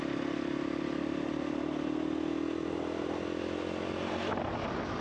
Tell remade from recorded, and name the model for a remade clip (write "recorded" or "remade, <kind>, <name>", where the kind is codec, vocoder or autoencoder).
recorded